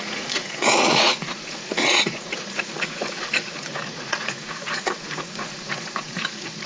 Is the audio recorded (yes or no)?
no